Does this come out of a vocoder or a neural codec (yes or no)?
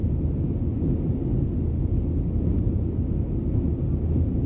no